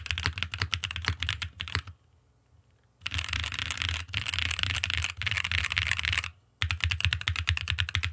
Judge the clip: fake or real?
real